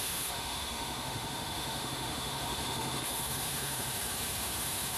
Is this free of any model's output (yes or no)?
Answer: no